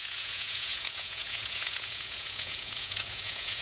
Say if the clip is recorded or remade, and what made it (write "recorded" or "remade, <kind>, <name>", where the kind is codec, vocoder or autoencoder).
remade, vocoder, Vocos